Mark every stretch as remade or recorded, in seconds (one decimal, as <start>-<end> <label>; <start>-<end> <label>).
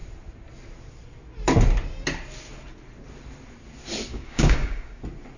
0.0-4.1 recorded; 4.1-5.0 remade; 5.0-5.4 recorded